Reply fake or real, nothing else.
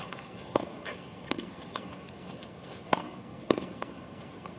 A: fake